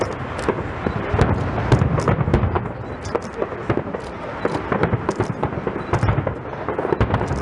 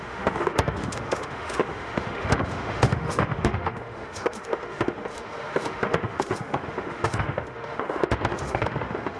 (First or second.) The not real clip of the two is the second